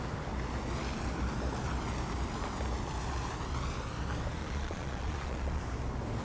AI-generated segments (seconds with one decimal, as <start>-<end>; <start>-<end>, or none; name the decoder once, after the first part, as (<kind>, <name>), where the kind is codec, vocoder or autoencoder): 4.4-5.6 (vocoder, Vocos)